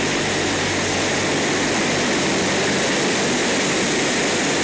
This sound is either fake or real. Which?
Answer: real